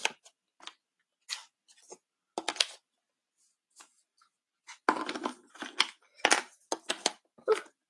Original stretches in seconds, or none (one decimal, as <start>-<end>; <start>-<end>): 0.0-7.9

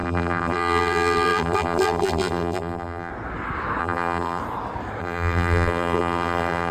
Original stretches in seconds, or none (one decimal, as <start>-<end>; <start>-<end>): 3.1-3.8; 4.4-5.0

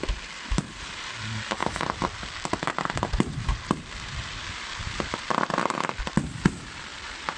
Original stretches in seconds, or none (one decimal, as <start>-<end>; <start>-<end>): none

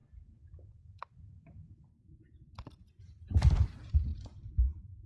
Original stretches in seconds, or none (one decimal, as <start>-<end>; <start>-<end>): 0.0-2.0

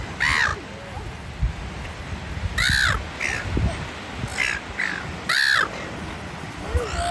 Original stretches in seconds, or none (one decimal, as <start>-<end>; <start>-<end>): 0.0-7.1